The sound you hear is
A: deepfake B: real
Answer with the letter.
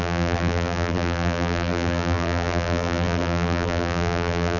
A